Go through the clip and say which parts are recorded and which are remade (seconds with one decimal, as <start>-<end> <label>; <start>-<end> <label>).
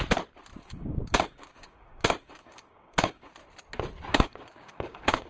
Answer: 0.0-0.6 recorded; 0.6-3.3 remade; 3.3-4.1 recorded; 4.1-5.3 remade